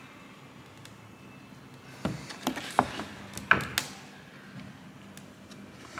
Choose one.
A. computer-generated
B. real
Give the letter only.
B